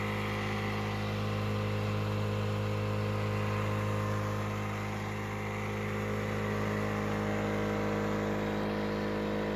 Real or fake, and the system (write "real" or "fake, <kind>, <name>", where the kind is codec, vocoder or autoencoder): real